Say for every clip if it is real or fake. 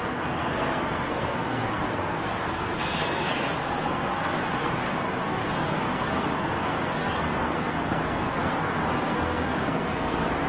fake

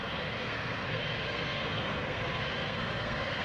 fake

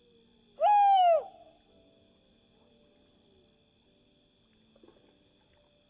real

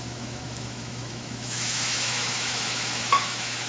fake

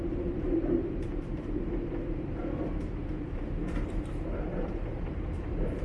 fake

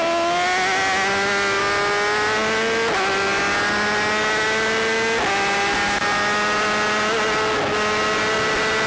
real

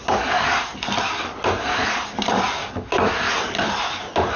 real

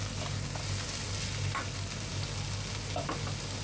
real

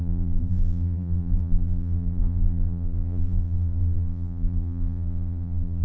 fake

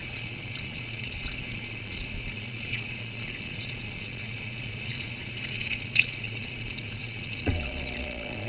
fake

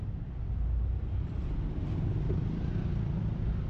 real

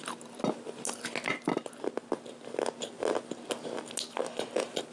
real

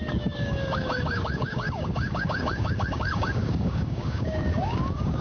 fake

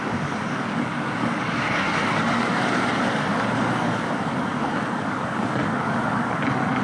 fake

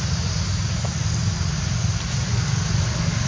real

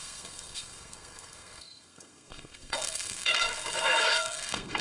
fake